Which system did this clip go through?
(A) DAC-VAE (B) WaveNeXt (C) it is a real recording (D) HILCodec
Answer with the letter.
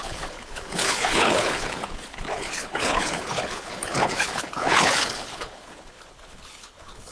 D